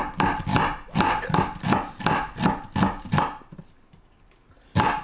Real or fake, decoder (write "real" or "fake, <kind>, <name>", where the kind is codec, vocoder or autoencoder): real